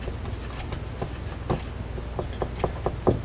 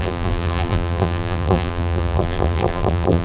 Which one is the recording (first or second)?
first